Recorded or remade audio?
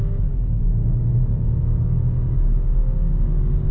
recorded